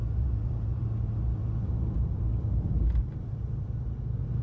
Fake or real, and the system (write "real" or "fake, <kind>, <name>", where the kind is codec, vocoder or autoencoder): fake, vocoder, BigVGAN v2